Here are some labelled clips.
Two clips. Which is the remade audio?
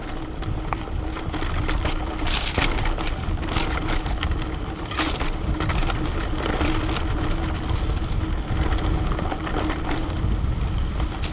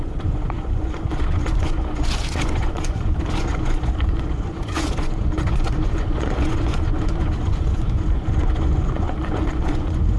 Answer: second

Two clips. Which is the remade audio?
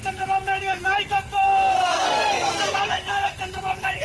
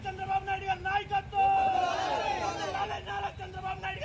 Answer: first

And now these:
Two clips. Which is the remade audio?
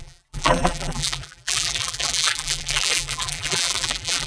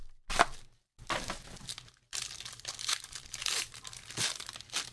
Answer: first